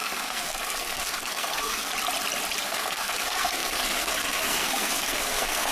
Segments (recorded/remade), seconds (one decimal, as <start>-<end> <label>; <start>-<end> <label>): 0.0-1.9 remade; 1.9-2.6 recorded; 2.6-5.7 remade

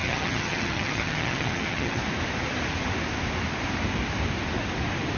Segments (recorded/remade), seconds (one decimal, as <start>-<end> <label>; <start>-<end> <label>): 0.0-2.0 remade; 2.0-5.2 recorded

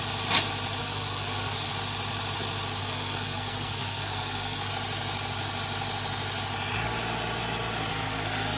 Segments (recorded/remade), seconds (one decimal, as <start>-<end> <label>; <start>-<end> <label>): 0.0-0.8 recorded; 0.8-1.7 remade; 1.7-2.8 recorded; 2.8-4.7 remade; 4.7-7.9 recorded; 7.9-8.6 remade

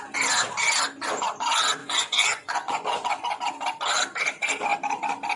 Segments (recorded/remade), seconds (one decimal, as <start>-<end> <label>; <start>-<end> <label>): 0.0-1.8 recorded; 1.8-3.4 remade; 3.4-5.4 recorded

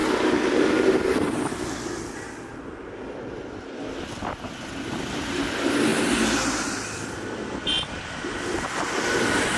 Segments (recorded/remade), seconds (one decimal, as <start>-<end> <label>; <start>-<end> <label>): 0.0-5.9 recorded; 5.9-6.7 remade; 6.7-9.6 recorded